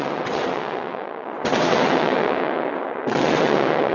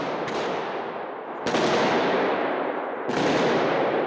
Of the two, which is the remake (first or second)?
first